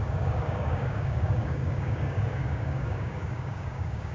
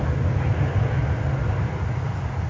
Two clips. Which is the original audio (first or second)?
second